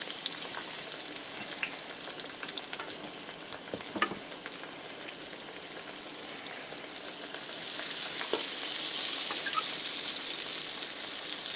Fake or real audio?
real